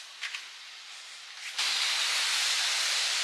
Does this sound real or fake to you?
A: real